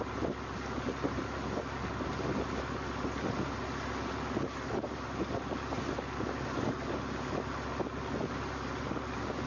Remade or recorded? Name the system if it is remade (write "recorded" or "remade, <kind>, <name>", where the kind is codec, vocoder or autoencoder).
recorded